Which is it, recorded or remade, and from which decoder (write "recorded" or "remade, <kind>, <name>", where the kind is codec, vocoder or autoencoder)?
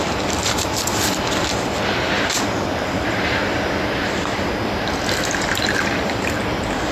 remade, vocoder, BigVGAN v2